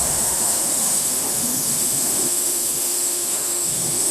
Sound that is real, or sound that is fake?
fake